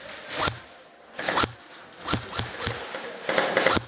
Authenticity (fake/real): real